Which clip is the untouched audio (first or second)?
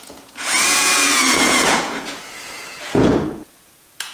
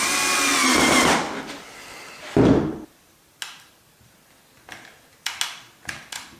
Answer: second